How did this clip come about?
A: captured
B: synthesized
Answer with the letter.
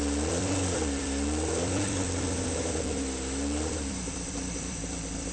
B